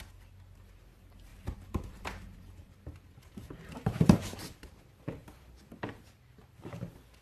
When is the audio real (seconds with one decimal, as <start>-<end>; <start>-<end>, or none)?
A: 0.0-1.3; 4.7-7.2